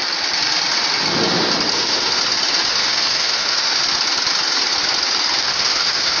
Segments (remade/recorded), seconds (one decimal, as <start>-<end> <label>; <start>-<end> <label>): 0.0-1.7 recorded; 1.7-2.2 remade; 2.2-2.7 recorded; 2.7-3.8 remade; 3.8-5.4 recorded; 5.4-6.2 remade